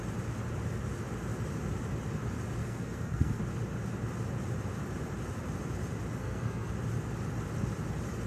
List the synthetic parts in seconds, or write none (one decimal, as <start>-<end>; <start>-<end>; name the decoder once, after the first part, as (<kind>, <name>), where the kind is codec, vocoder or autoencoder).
2.6-3.4 (codec, SNAC); 6.2-6.7